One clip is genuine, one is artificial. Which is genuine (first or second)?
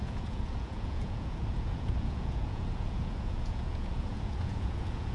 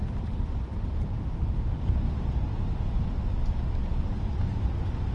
second